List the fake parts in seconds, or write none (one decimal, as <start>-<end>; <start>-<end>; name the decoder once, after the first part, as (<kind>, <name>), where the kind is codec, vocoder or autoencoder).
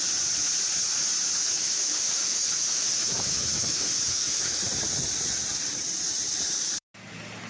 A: 1.4-4.6 (autoencoder, DAC-VAE)